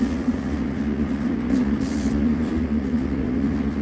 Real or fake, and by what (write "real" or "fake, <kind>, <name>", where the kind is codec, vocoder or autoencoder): fake, vocoder, Vocos